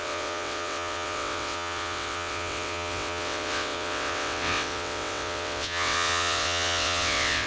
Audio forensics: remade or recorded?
remade